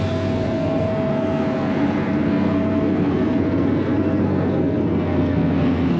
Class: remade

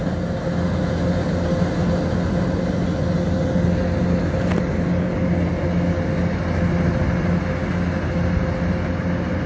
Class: recorded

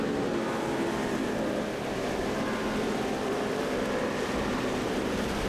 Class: recorded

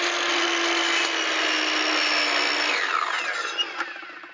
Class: recorded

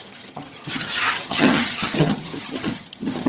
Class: remade